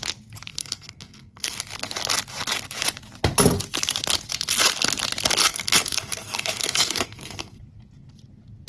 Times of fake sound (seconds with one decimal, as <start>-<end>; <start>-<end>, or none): 0.5-1.6; 5.4-7.6